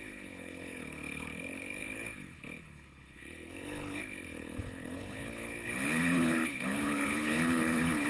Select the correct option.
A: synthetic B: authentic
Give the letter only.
A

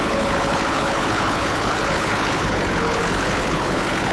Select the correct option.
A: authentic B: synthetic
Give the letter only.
B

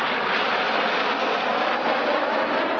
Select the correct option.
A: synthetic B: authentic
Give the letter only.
B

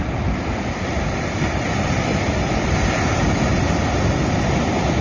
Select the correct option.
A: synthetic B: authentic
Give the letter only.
B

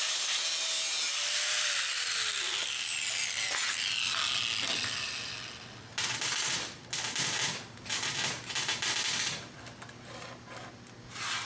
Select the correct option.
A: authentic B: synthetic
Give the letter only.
A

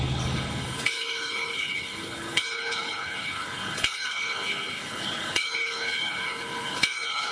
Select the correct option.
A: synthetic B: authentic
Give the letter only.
A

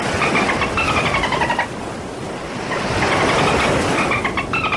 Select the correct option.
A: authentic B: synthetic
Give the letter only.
A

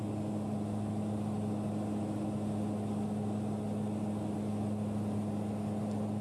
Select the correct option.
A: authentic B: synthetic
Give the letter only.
A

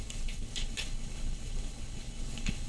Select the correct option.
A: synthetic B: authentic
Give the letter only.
A